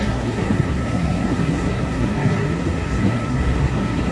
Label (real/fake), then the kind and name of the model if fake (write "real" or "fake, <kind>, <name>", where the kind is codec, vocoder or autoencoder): fake, codec, SNAC